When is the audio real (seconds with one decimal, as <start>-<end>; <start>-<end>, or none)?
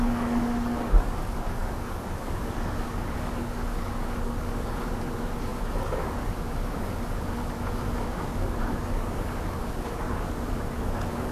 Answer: none